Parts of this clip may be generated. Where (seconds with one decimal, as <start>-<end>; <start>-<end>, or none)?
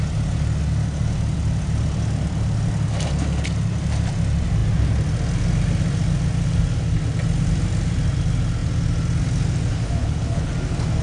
10.0-10.5